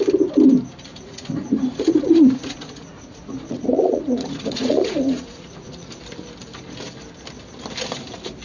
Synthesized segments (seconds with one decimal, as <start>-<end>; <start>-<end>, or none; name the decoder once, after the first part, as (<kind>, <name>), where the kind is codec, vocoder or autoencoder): 0.9-5.9 (vocoder, Vocos)